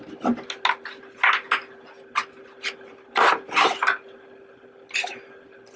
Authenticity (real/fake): real